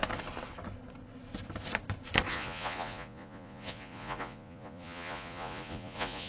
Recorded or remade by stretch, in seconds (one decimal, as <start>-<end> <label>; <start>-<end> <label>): 0.0-2.3 recorded; 2.3-6.3 remade